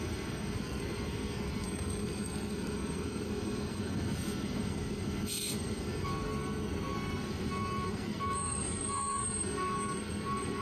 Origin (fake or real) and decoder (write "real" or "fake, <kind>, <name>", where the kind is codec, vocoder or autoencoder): fake, codec, SNAC